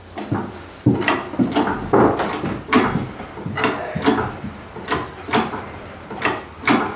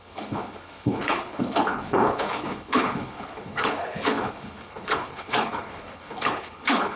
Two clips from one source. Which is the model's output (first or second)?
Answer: second